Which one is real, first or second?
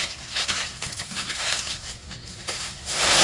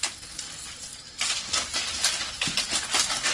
second